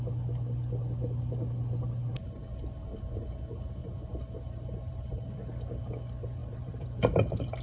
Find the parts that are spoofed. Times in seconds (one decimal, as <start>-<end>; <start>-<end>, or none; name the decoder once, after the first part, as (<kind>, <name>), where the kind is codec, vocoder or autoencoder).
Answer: 3.8-5.5 (vocoder, BigVGAN v2); 6.4-7.6